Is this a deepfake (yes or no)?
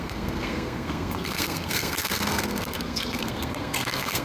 yes